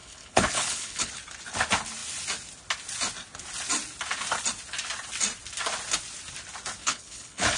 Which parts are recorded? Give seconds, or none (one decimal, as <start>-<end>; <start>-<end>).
1.1-6.8